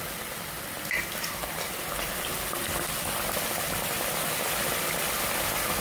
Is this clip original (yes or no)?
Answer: yes